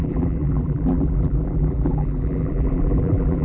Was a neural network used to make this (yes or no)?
yes